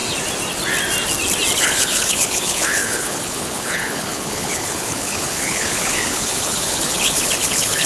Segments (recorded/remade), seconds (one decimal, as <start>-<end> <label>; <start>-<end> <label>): 0.0-1.6 recorded; 1.6-7.9 remade